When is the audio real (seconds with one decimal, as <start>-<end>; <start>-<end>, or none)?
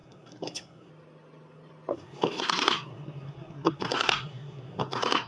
0.9-1.9